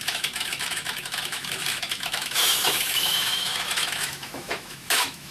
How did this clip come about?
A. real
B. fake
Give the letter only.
B